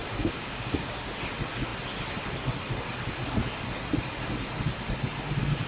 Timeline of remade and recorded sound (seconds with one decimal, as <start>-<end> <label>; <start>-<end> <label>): 0.0-1.0 remade; 1.0-5.7 recorded